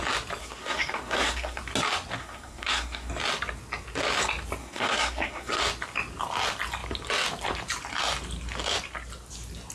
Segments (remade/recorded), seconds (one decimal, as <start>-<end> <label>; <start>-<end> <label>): 0.0-0.4 recorded; 0.4-1.6 remade; 1.6-2.2 recorded; 2.2-3.1 remade; 3.1-4.6 recorded; 4.6-5.6 remade; 5.6-9.7 recorded